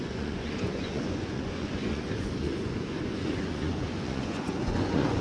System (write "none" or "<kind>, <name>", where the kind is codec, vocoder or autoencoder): vocoder, Vocos